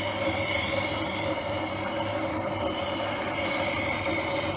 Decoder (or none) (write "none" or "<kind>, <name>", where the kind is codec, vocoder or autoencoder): none